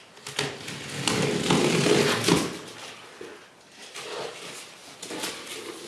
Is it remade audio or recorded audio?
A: recorded